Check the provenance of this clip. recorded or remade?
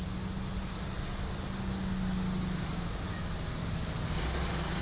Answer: recorded